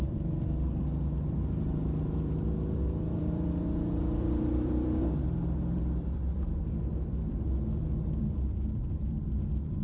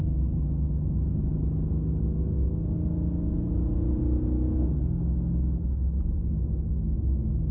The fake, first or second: first